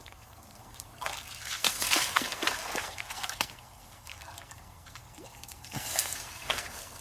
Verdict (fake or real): fake